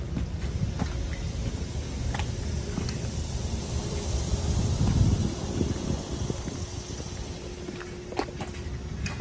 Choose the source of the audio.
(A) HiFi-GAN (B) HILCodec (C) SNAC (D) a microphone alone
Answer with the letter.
D